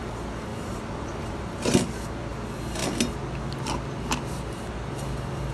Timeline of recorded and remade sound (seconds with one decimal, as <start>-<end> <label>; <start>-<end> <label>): 0.0-0.5 recorded; 0.5-1.5 remade; 1.5-5.5 recorded